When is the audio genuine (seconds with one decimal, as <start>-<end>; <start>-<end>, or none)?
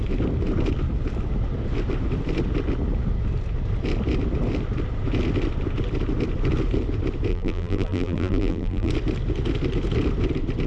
0.0-7.3; 8.9-10.7